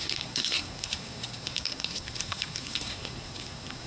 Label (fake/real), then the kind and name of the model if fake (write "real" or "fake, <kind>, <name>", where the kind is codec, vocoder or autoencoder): fake, codec, SNAC